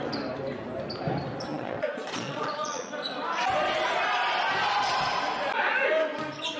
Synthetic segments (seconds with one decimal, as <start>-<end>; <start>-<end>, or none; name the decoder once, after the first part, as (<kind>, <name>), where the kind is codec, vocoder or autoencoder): 1.5-2.9 (vocoder, Vocos)